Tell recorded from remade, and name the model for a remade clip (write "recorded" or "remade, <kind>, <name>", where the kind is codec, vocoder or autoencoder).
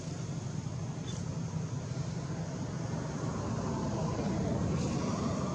recorded